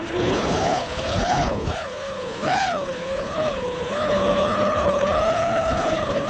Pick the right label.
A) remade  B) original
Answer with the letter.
A